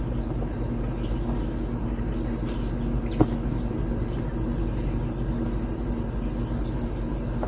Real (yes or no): yes